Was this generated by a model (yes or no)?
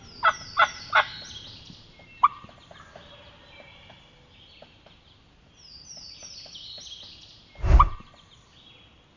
no